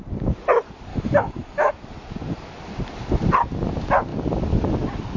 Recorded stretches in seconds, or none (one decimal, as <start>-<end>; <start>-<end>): 0.0-0.9; 1.7-5.2